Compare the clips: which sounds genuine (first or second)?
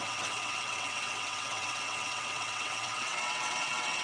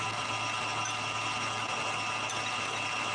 second